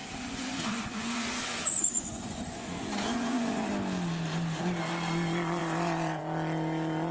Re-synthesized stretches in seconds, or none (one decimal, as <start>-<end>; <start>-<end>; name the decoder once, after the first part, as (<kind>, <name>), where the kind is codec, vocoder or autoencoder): 0.0-3.7 (vocoder, Vocos); 5.6-6.2